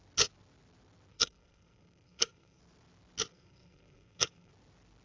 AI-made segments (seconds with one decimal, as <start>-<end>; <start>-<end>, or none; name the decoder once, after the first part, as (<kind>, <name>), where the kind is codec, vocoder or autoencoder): 1.1-2.6 (codec, SNAC); 3.3-4.5